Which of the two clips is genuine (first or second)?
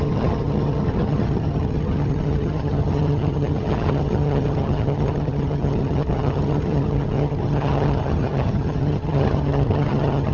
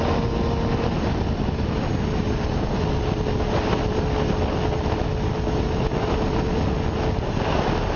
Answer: second